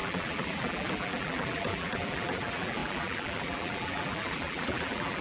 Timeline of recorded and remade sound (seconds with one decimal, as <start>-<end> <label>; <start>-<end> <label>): 0.0-5.2 remade